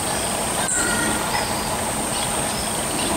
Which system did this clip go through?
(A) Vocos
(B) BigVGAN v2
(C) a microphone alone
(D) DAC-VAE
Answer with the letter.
C